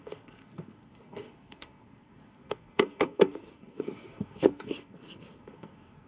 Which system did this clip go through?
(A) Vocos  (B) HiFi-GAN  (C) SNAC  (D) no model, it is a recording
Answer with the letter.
C